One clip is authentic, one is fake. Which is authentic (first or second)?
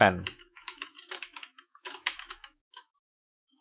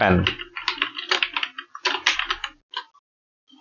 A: second